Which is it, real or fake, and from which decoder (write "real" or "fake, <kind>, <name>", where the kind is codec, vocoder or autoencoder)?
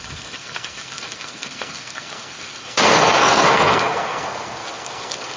fake, codec, SNAC